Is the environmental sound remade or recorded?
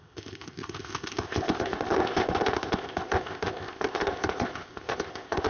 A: remade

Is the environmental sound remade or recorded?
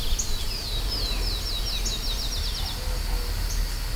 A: recorded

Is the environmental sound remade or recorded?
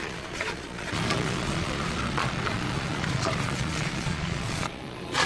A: remade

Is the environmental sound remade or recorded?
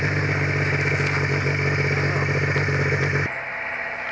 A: recorded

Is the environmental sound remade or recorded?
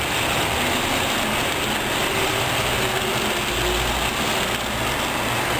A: recorded